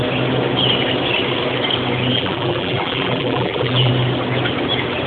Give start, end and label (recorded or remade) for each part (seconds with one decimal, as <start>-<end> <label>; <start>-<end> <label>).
0.0-2.1 recorded; 2.1-3.9 remade; 3.9-5.1 recorded